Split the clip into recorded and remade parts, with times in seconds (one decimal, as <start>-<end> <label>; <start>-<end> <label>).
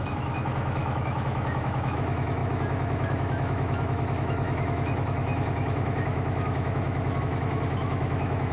0.0-8.5 remade